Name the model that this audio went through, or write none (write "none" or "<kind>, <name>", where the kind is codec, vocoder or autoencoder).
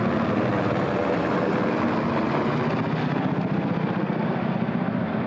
none